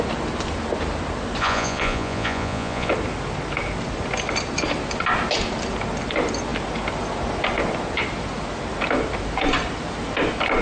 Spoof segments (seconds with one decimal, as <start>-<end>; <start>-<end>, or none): 1.4-2.9